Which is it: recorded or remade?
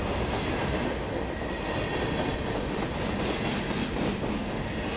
recorded